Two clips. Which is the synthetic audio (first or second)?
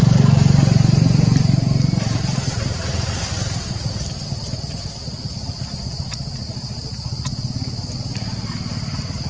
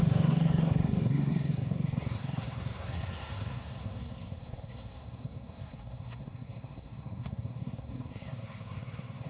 second